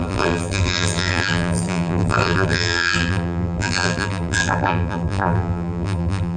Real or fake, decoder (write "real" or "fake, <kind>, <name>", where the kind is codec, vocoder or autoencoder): fake, vocoder, BigVGAN v2